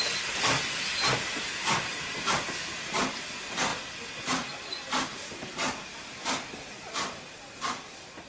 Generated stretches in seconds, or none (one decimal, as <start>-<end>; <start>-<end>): 3.7-5.2; 5.9-8.3